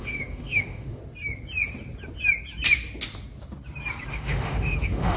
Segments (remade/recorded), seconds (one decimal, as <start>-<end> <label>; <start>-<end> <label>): 0.0-1.0 remade; 1.0-4.1 recorded; 4.1-5.2 remade